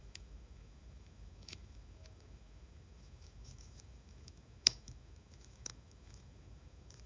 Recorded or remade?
remade